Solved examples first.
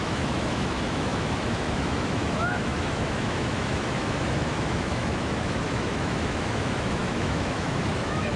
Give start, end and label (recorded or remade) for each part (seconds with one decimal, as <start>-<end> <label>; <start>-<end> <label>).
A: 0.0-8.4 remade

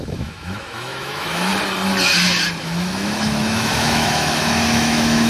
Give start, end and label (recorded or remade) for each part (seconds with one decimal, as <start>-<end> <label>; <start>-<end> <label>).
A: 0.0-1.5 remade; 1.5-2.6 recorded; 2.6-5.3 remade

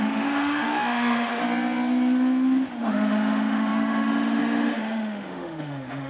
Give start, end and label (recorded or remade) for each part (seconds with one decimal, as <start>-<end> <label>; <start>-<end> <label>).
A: 0.0-1.4 remade; 1.4-2.8 recorded; 2.8-6.1 remade

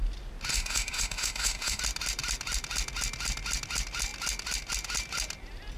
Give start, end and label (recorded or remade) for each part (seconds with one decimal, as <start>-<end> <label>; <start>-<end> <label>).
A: 0.0-0.5 recorded; 0.5-1.8 remade; 1.8-5.8 recorded

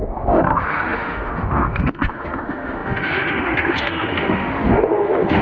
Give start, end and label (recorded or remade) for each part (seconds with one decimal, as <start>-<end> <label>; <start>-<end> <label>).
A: 0.0-5.4 remade

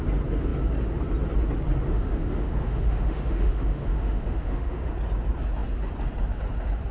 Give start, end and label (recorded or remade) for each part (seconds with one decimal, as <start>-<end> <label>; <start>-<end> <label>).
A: 0.0-1.9 recorded; 1.9-4.9 remade; 4.9-6.9 recorded